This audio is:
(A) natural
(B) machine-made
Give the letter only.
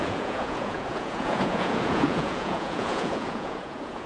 B